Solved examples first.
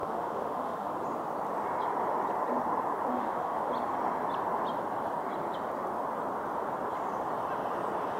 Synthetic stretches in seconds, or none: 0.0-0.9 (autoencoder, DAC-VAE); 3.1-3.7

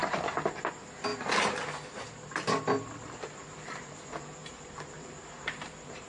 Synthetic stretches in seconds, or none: 4.4-6.1 (vocoder, BigVGAN v2)

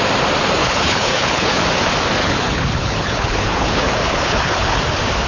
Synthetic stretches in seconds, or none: 0.6-1.6 (codec, HILCodec); 2.2-4.8

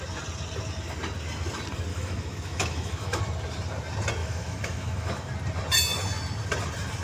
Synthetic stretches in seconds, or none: 1.9-3.2 (autoencoder, DAC-VAE); 4.2-5.3

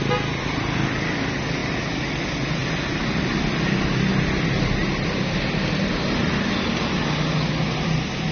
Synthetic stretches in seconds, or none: none

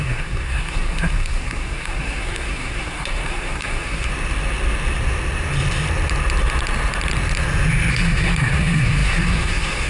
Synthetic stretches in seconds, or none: 0.0-4.1 (codec, SNAC); 7.9-9.9